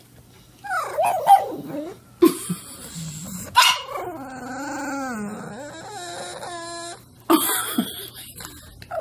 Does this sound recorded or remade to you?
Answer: recorded